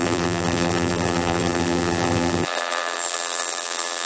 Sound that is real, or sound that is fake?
fake